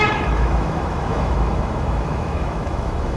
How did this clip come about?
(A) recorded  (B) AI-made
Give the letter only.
B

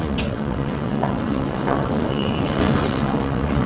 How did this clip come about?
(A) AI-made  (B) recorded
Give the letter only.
A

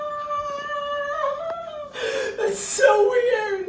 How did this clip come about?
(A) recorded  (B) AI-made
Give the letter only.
A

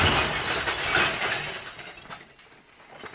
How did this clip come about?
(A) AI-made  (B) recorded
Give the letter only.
B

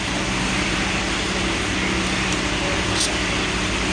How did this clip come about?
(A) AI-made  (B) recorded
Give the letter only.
B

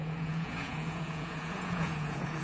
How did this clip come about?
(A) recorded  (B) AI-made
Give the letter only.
B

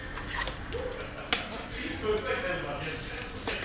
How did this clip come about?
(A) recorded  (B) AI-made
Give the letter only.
A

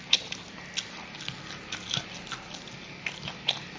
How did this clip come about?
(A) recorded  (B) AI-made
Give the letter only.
A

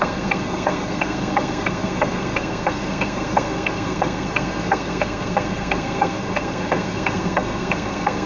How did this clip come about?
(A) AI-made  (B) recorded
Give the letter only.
A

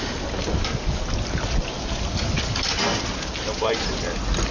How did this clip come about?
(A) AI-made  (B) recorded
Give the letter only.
B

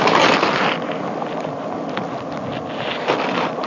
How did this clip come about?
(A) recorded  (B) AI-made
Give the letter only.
A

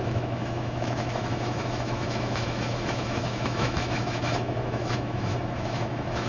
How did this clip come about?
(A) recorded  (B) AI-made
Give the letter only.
B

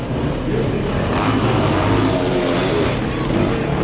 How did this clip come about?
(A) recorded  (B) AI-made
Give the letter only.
A